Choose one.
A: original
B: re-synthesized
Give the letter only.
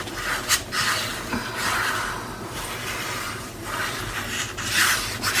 B